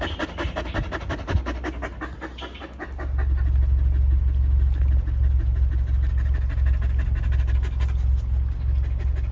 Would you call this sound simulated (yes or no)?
no